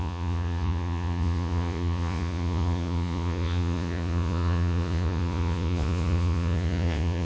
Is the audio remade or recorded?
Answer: remade